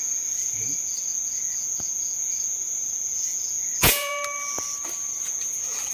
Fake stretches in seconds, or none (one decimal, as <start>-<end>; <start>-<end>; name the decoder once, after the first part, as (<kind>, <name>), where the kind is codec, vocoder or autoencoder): 0.0-4.1 (vocoder, Vocos); 5.2-5.9